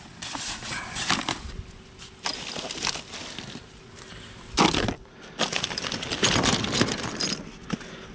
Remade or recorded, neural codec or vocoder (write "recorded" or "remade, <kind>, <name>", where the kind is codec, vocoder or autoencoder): recorded